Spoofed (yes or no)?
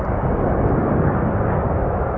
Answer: no